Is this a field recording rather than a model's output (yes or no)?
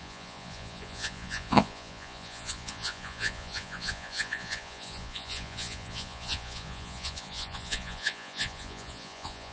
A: no